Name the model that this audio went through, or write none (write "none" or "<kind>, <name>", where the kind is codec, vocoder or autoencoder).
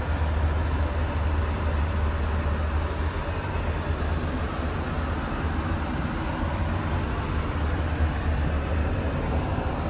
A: none